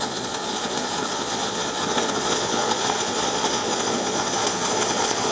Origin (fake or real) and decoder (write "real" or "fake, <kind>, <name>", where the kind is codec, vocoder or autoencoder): fake, vocoder, Vocos